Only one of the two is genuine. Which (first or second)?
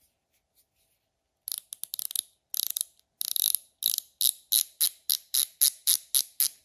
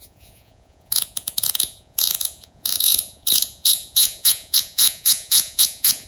first